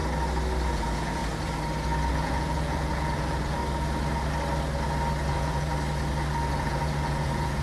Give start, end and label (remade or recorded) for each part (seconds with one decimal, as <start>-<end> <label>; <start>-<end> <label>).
0.0-0.7 recorded; 0.7-1.2 remade; 1.2-2.1 recorded; 2.1-3.6 remade; 3.6-5.3 recorded; 5.3-5.7 remade; 5.7-6.5 recorded; 6.5-7.6 remade